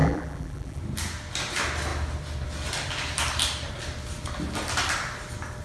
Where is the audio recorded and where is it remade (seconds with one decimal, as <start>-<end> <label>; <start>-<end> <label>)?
0.0-0.8 remade; 0.8-5.6 recorded